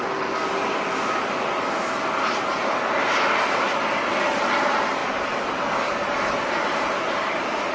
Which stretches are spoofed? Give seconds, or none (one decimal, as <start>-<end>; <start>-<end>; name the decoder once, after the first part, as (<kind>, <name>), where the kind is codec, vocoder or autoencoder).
none